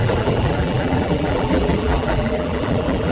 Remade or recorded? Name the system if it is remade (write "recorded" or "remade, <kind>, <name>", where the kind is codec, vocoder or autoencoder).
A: remade, vocoder, BigVGAN v2